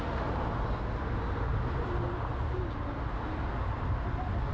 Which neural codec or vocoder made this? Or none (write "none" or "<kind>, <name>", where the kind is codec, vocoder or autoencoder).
none